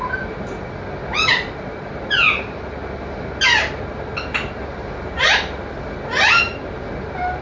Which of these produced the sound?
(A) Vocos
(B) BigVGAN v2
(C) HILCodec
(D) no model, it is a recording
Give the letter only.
D